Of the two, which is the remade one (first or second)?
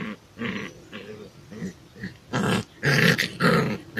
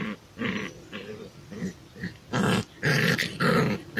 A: second